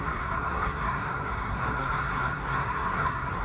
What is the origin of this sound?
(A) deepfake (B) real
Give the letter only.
A